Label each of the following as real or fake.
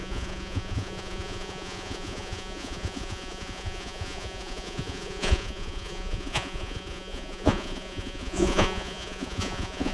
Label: fake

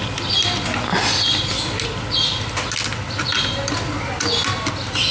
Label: real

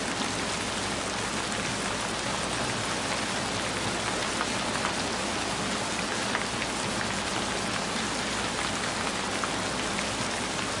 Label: real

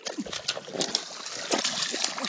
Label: real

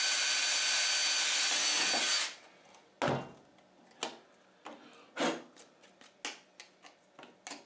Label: real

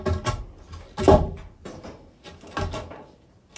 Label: real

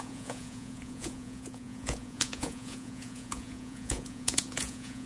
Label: fake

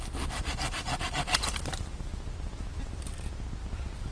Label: real